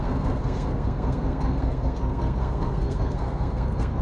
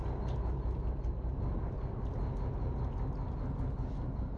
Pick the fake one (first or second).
first